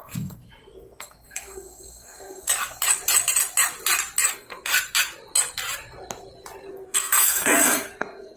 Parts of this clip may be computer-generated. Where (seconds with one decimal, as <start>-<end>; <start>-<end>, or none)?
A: 0.0-2.5; 4.3-4.7; 6.7-8.4